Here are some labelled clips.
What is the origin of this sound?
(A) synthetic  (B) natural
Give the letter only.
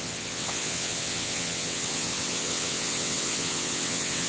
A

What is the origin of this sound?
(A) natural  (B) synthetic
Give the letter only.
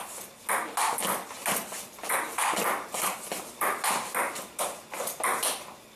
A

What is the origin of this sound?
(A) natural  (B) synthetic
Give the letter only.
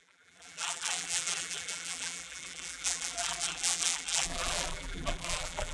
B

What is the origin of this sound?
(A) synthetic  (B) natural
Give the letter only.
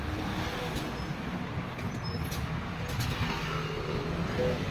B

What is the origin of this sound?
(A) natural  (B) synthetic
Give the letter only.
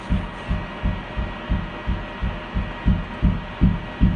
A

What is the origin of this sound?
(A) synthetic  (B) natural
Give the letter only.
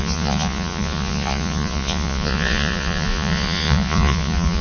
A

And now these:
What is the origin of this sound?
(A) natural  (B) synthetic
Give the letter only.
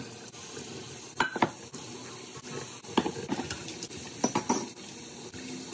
A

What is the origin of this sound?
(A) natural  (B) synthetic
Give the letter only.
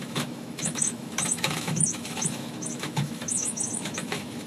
B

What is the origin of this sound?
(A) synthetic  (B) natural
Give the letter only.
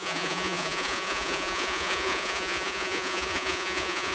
A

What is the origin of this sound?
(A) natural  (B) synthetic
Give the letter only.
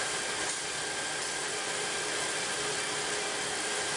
A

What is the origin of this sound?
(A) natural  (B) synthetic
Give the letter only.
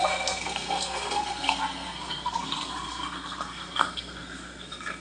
B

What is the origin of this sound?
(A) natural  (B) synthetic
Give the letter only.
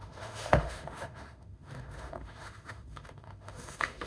B